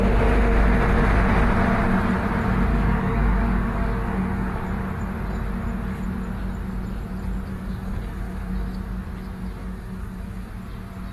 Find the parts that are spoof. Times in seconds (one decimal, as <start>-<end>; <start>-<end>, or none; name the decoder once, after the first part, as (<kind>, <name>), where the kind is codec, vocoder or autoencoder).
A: 2.7-4.6 (codec, DAC); 7.5-8.5; 9.6-10.5